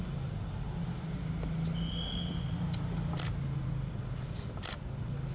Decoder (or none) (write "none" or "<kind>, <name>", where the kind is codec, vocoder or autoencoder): none